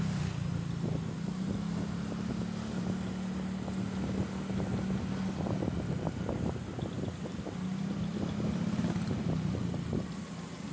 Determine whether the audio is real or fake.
real